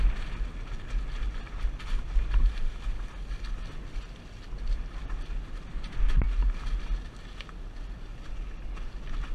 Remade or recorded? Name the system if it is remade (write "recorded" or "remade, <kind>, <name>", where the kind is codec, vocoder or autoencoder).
recorded